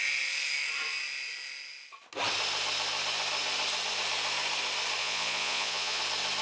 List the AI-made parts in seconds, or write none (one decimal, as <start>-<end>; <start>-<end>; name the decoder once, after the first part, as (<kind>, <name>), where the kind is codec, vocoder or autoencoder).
5.0-6.0 (vocoder, Vocos)